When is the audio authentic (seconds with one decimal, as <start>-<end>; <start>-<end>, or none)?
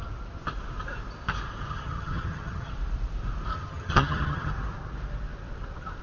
0.0-1.7; 2.7-3.5; 4.5-6.0